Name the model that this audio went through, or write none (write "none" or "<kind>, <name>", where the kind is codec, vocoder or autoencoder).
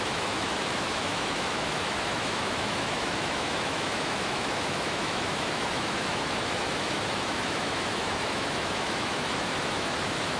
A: autoencoder, DAC-VAE